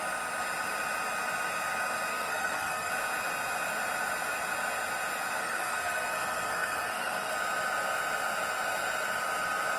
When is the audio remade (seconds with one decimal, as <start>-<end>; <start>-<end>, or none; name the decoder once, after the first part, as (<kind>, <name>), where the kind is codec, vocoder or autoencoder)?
2.1-2.9 (codec, SNAC); 5.4-7.3